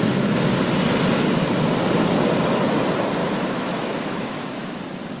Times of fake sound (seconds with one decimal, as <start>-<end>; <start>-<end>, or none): 3.2-4.8